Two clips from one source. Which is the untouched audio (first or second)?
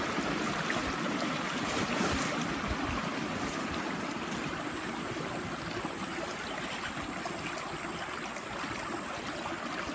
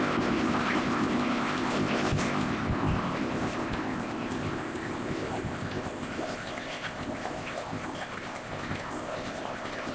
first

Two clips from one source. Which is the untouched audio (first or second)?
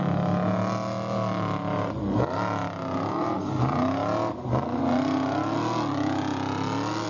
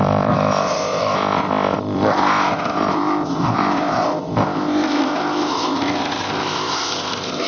first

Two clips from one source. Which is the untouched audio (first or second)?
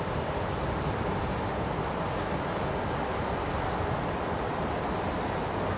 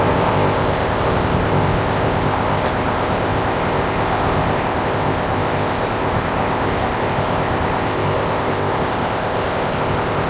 first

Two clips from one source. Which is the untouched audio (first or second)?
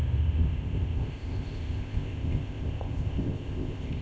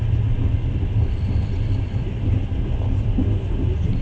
second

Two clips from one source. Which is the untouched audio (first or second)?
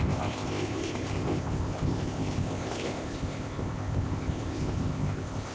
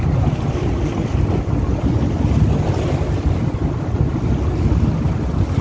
second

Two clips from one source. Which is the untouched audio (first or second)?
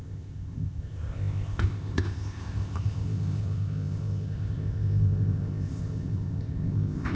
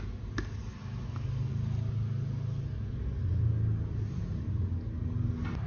second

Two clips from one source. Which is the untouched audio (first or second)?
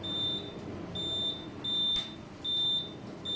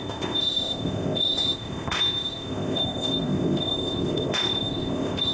first